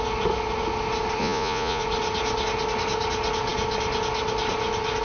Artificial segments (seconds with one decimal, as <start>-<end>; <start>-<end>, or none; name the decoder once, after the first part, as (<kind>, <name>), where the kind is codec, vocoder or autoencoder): 1.2-1.8 (vocoder, Vocos)